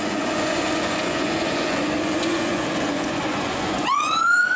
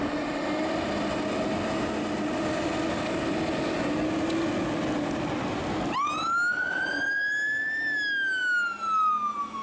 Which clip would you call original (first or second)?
second